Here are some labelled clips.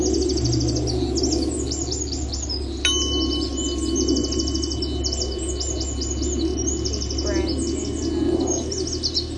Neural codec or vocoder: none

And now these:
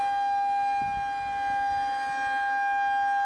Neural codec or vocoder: none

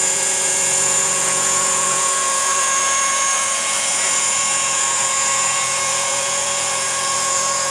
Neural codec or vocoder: vocoder, Vocos